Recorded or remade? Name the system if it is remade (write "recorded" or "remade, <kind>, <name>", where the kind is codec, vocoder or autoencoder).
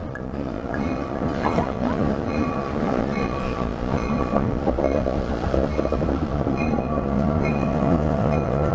remade, vocoder, Vocos